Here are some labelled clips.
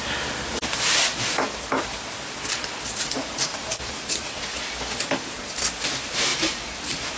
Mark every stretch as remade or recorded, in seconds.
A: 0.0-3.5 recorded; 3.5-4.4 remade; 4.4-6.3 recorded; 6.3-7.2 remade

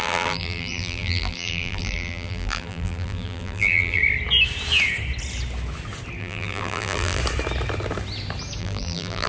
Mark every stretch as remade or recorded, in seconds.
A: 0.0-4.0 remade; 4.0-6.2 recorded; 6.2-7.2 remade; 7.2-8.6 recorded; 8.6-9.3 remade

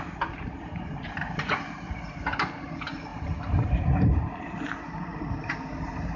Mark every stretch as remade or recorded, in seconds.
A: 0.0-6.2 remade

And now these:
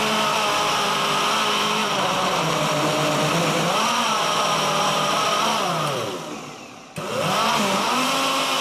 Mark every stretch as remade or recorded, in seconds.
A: 0.0-1.8 recorded; 1.8-2.5 remade; 2.5-8.6 recorded